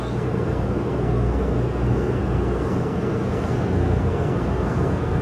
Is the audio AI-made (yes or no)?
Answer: yes